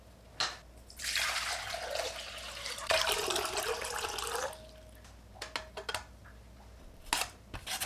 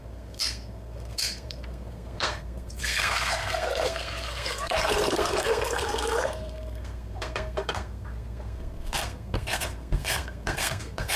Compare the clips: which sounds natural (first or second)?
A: first